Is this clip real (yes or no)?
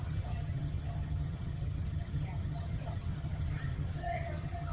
no